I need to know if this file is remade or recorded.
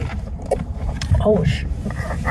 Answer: remade